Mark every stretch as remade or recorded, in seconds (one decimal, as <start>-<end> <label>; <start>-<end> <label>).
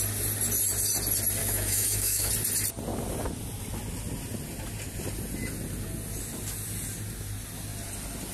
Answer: 0.0-1.4 recorded; 1.4-2.3 remade; 2.3-8.3 recorded